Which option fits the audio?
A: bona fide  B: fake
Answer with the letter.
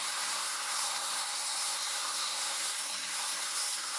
B